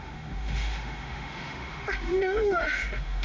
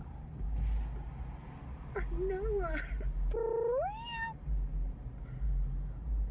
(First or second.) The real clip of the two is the second